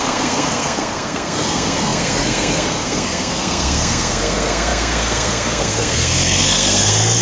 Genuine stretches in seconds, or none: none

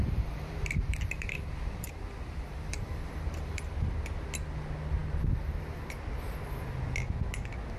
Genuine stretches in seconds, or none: 3.7-7.8

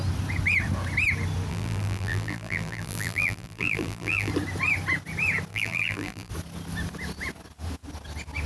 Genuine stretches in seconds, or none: 0.0-1.5; 4.3-5.5; 6.3-8.5

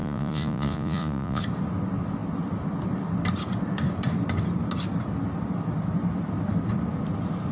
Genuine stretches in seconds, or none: 1.4-7.5